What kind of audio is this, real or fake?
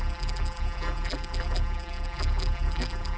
fake